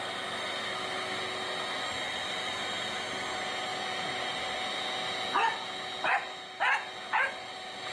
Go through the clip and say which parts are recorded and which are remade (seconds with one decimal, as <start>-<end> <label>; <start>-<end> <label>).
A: 0.0-7.9 recorded